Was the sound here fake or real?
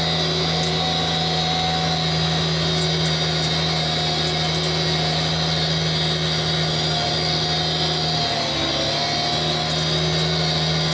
real